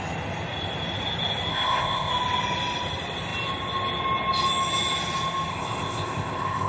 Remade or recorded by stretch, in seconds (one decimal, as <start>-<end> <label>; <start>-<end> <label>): 0.0-1.5 recorded; 1.5-2.1 remade; 2.1-5.5 recorded; 5.5-6.7 remade